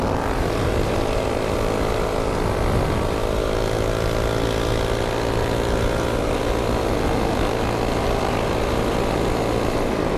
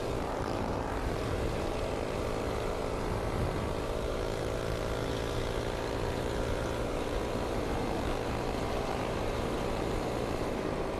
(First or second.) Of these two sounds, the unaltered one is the first